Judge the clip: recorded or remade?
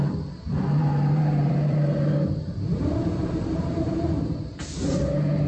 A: remade